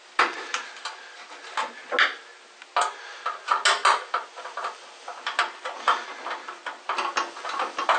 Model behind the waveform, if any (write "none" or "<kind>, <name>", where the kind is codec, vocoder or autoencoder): none